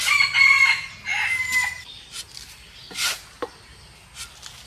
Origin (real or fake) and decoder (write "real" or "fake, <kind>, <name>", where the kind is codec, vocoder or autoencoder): real